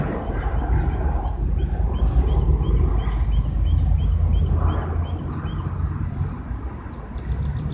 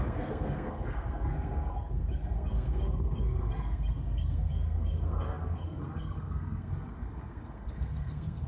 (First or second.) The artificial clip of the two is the second